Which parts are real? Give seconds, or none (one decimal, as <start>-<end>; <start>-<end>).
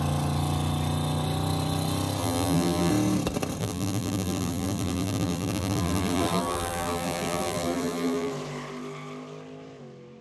0.0-2.2; 2.9-3.6; 8.3-10.2